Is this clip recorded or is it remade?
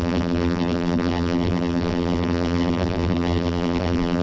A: remade